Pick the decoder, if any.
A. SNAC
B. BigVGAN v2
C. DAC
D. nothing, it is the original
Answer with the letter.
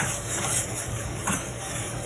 C